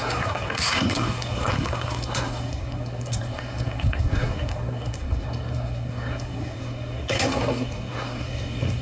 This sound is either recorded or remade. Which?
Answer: remade